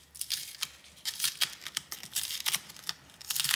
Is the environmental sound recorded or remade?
recorded